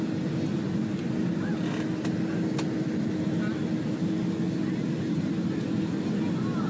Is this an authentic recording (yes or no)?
yes